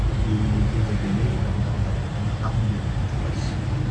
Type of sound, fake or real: real